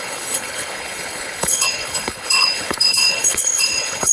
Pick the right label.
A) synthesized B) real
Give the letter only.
A